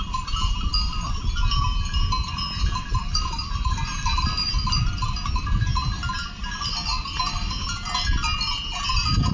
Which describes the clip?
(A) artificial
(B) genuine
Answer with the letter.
A